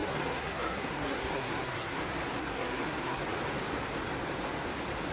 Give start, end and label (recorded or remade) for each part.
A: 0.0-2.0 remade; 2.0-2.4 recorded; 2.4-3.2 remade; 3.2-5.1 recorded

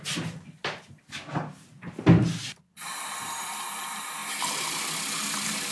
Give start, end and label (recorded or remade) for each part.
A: 0.0-5.7 recorded

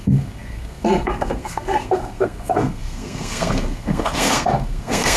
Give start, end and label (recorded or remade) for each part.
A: 0.0-5.2 remade